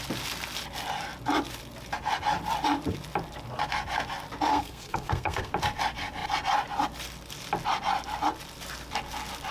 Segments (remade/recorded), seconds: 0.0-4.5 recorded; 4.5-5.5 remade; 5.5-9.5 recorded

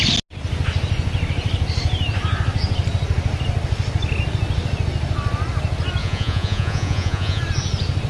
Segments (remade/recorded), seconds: 0.0-6.0 recorded; 6.0-7.4 remade; 7.4-8.1 recorded

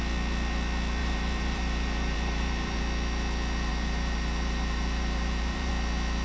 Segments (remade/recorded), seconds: 0.0-1.0 recorded; 1.0-2.8 remade; 2.8-3.7 recorded; 3.7-5.7 remade; 5.7-6.2 recorded

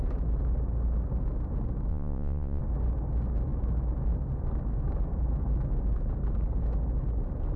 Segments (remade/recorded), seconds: 0.0-1.9 recorded; 1.9-2.6 remade; 2.6-7.6 recorded

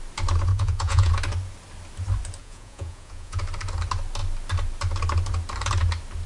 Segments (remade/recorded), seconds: 0.0-0.5 recorded; 0.5-1.1 remade; 1.1-2.4 recorded; 2.4-3.4 remade; 3.4-6.3 recorded